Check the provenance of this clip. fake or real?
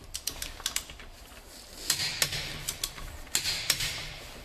real